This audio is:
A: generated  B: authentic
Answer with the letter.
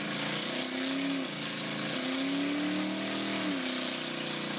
B